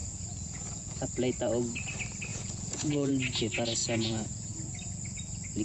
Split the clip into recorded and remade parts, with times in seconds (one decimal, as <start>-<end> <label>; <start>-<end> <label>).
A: 0.0-1.0 remade; 1.0-2.3 recorded; 2.3-3.1 remade; 3.1-3.8 recorded; 3.8-4.5 remade; 4.5-5.6 recorded